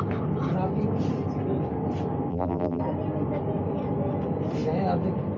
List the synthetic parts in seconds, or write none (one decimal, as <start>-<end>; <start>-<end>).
2.3-2.8